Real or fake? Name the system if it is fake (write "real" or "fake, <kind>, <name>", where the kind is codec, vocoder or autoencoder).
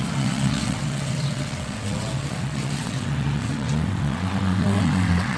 fake, vocoder, WaveNeXt